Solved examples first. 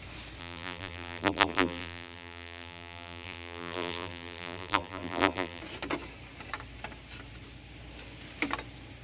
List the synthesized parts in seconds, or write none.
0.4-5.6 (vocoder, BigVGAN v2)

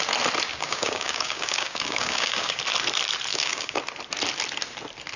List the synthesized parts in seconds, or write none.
0.5-2.6 (codec, DAC); 3.3-3.8

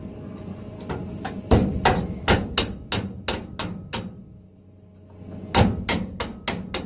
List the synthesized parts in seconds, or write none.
1.0-2.5 (vocoder, BigVGAN v2)

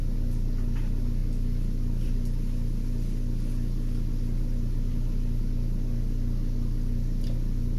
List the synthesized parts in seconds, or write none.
none

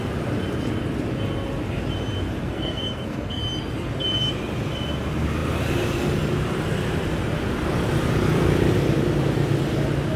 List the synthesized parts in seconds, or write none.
2.4-3.4 (codec, SNAC)